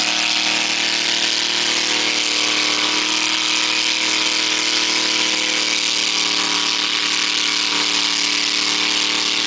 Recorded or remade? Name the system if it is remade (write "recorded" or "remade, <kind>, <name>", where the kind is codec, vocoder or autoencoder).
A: recorded